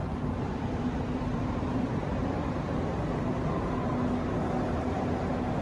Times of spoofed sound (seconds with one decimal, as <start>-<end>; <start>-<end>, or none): 0.0-1.9